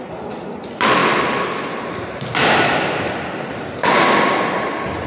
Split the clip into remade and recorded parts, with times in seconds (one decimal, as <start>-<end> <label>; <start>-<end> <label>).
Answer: 0.0-5.1 recorded